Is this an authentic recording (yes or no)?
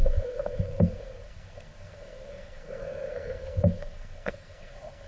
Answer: no